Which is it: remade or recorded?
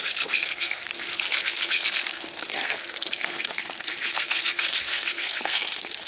remade